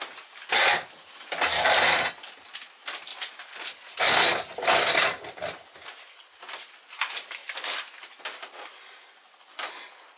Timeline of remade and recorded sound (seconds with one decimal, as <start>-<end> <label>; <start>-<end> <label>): 0.0-10.2 recorded